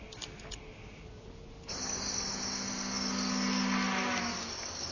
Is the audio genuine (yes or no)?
yes